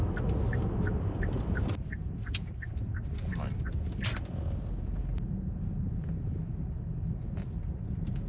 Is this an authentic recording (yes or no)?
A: yes